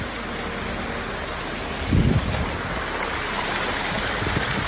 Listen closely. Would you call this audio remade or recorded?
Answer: recorded